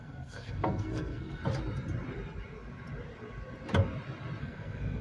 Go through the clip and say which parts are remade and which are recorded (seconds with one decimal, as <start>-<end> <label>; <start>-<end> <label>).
0.0-1.4 remade; 1.4-4.4 recorded; 4.4-5.0 remade